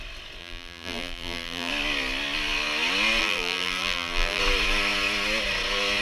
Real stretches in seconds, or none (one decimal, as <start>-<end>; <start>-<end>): 0.0-0.4; 1.7-3.2; 4.4-6.0